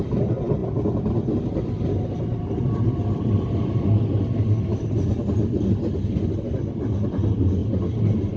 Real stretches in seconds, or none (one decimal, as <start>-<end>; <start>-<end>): 0.0-8.4